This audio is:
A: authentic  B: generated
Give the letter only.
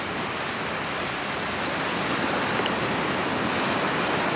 A